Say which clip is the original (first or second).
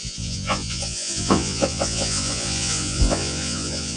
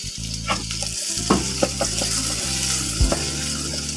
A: second